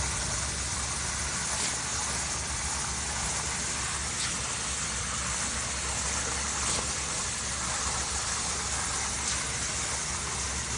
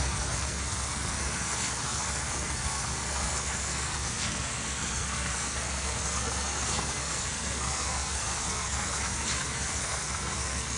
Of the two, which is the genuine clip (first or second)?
first